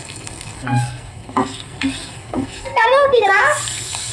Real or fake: fake